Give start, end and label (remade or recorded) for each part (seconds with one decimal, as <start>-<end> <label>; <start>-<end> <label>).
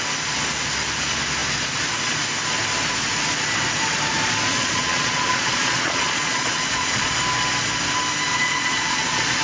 0.0-4.5 recorded; 4.5-7.2 remade; 7.2-8.3 recorded; 8.3-9.4 remade